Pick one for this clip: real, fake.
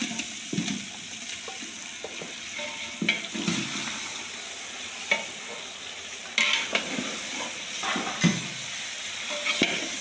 real